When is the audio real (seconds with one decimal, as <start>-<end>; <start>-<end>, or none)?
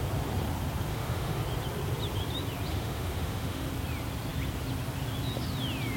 0.0-0.9; 1.4-2.7; 3.7-6.0